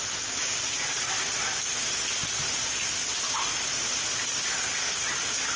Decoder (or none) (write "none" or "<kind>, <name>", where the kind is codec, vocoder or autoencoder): none